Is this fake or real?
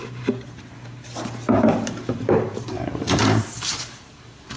fake